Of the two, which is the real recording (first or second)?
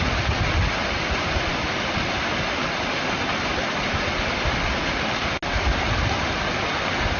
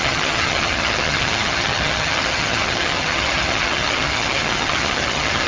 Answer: first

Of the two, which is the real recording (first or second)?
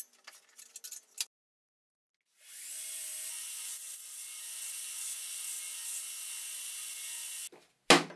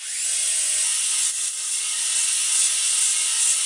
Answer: first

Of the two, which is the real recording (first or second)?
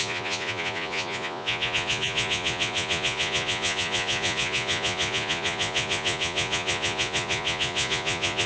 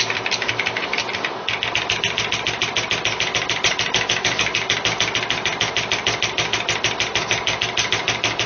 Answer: second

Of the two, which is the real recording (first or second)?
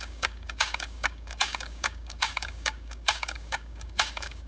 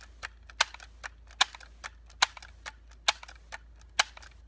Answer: second